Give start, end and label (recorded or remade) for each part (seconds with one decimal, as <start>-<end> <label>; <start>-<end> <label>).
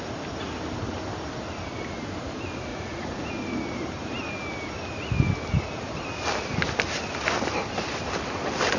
0.0-2.7 recorded; 2.7-3.3 remade; 3.3-8.8 recorded